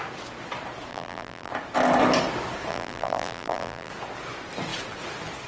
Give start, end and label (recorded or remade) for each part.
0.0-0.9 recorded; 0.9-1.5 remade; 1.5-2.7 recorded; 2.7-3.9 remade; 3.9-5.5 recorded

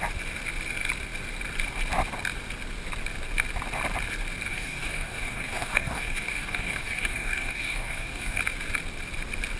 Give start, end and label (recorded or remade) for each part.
0.0-4.5 recorded; 4.5-8.4 remade; 8.4-9.6 recorded

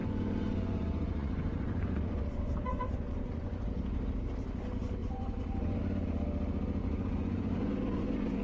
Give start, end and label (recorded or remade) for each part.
0.0-3.6 remade; 3.6-5.0 recorded; 5.0-5.8 remade; 5.8-6.8 recorded; 6.8-8.4 remade

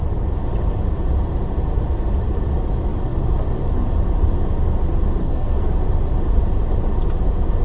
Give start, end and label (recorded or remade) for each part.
0.0-5.2 recorded; 5.2-5.7 remade; 5.7-7.6 recorded

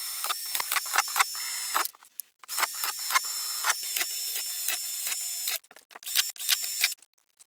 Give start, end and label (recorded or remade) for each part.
0.0-0.4 recorded; 0.4-1.2 remade; 1.2-1.9 recorded; 1.9-4.4 remade; 4.4-7.5 recorded

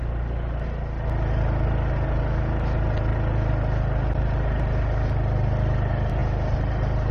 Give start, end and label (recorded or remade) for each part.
0.0-7.1 recorded